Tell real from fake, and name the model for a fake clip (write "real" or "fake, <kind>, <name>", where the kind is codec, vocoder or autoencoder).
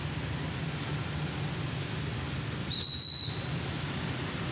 real